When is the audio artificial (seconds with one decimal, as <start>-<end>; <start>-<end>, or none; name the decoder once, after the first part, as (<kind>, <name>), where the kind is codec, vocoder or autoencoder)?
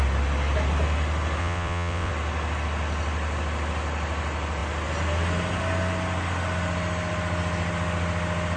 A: 1.4-2.1 (vocoder, WaveNeXt)